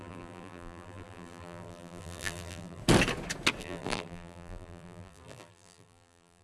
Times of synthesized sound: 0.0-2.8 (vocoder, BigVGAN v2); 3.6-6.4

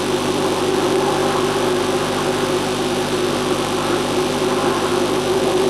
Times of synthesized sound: none